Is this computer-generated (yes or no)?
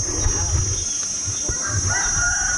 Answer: no